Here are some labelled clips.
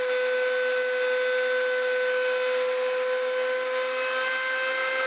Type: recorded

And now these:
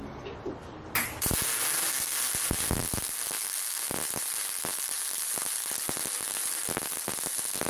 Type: recorded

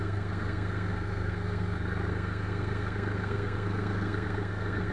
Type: remade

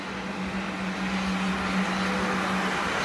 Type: recorded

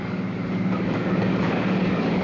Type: remade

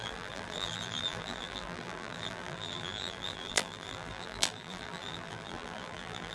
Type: remade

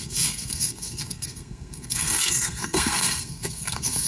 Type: remade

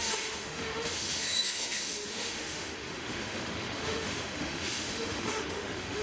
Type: remade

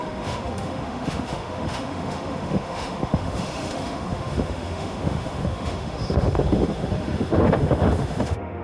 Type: remade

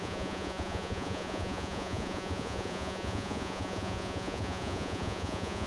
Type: remade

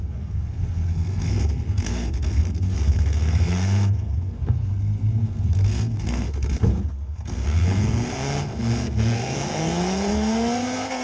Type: remade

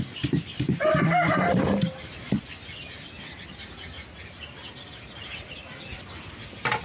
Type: recorded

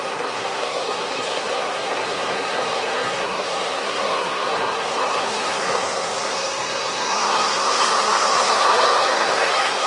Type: remade